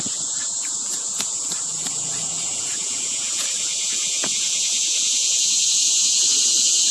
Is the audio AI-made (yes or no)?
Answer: yes